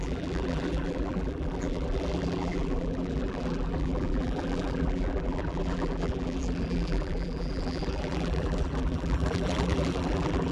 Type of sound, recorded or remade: remade